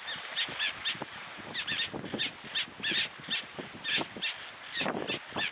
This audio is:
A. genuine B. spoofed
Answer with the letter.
A